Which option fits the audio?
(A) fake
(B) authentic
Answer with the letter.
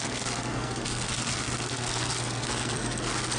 A